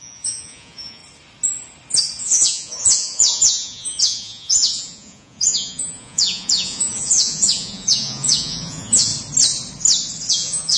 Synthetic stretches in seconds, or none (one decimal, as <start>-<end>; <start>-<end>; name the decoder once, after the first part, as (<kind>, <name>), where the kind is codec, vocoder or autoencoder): 0.0-1.0 (vocoder, Vocos); 2.2-9.1; 10.3-10.8